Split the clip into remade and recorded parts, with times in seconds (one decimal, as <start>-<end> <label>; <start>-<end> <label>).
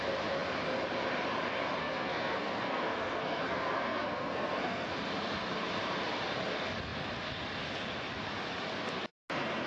0.0-1.8 recorded; 1.8-4.9 remade; 4.9-9.7 recorded